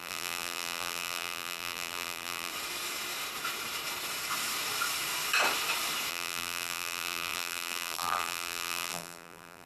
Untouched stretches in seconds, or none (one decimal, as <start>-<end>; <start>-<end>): 2.5-6.1